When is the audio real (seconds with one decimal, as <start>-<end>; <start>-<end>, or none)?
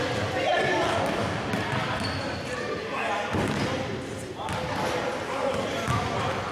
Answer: 0.0-0.9; 1.5-6.5